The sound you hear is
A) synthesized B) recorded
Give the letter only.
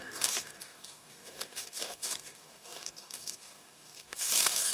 A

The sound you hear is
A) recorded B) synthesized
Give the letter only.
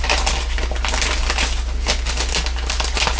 A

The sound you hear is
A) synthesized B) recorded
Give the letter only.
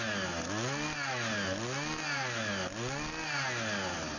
B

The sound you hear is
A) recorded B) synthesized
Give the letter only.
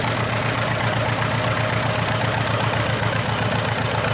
A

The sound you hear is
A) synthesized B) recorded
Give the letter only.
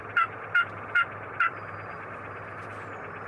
B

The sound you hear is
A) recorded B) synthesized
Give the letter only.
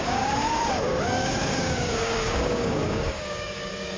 B